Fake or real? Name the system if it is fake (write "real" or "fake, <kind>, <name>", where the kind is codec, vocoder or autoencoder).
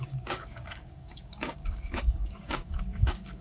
fake, codec, DAC